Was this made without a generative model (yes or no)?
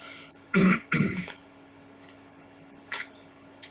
no